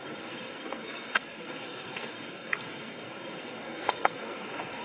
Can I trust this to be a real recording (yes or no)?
no